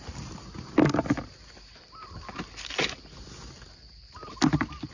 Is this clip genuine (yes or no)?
yes